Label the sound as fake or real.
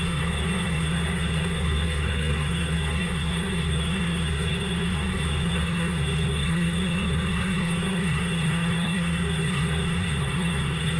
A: fake